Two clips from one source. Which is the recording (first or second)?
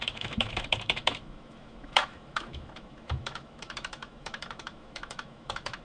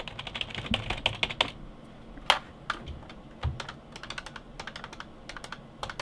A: second